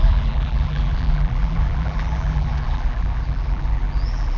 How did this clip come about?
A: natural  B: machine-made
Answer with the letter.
B